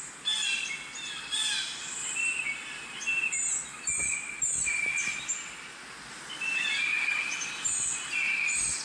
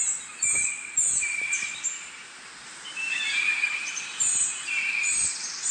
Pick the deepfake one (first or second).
second